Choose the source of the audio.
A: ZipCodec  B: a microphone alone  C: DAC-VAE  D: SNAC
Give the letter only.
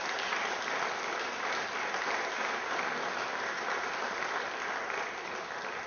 B